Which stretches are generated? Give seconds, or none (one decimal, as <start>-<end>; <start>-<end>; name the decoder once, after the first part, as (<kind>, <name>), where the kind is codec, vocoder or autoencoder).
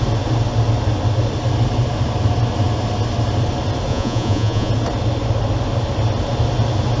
3.9-4.7 (vocoder, Vocos)